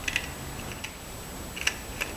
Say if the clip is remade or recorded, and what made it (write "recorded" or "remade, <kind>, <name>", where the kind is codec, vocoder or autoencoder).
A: recorded